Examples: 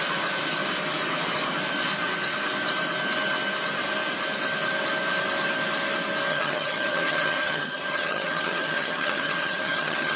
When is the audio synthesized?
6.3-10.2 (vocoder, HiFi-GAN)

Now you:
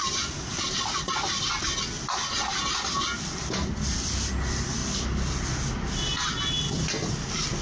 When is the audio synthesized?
none

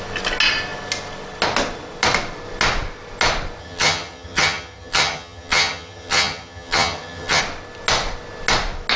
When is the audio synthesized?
3.6-7.4 (vocoder, HiFi-GAN)

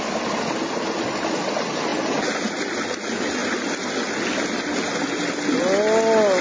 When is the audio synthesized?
none